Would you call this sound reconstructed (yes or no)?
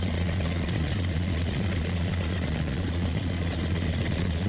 yes